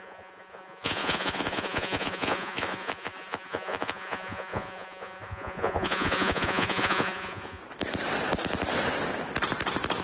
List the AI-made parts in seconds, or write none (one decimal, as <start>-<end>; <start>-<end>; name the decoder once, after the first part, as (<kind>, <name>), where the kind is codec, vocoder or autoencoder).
0.0-7.6 (vocoder, Vocos)